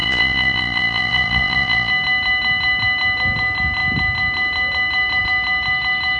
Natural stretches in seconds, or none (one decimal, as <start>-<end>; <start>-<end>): 1.9-6.2